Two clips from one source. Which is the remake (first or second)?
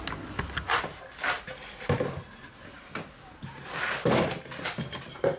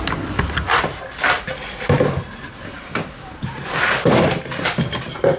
second